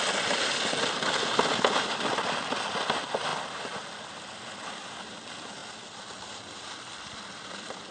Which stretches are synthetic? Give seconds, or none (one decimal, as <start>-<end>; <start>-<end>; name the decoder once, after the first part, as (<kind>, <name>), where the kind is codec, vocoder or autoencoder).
none

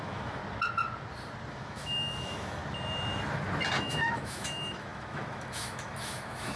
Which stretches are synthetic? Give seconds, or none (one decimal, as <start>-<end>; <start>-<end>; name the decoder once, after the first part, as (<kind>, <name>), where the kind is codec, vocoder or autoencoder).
0.0-0.4 (autoencoder, DAC-VAE); 1.5-2.6; 3.8-6.6

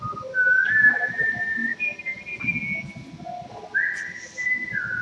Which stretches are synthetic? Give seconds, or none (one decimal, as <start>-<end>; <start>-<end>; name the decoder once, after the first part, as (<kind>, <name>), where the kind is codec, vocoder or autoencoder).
none

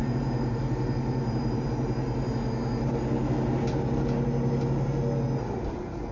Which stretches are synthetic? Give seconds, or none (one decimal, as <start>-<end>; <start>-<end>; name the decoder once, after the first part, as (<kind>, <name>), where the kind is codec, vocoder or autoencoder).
0.0-1.7 (vocoder, BigVGAN v2)